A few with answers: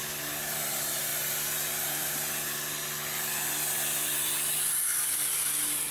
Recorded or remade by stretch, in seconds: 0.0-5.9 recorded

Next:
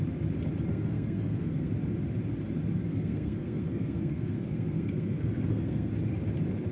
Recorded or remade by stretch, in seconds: 0.0-0.7 recorded; 0.7-1.7 remade; 1.7-2.8 recorded; 2.8-5.9 remade; 5.9-6.7 recorded

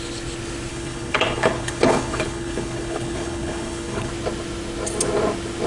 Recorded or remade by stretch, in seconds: 0.0-0.7 recorded; 0.7-4.1 remade; 4.1-5.7 recorded

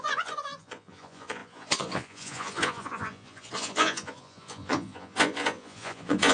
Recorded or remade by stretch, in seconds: 0.0-6.3 remade

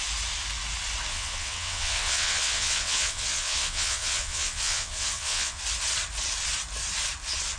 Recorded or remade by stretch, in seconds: 0.0-1.1 recorded; 1.1-5.6 remade; 5.6-7.6 recorded

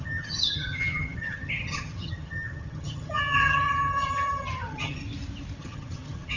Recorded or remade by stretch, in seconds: 0.0-5.0 remade; 5.0-5.6 recorded; 5.6-6.4 remade